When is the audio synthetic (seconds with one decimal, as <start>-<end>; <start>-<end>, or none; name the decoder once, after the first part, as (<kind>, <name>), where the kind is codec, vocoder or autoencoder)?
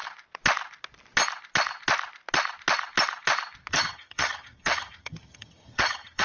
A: 3.7-6.2 (vocoder, HiFi-GAN)